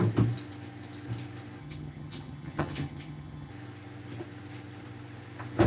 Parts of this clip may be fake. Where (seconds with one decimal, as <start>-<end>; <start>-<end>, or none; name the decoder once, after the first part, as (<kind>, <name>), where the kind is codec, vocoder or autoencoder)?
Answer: 1.6-3.5 (vocoder, HiFi-GAN)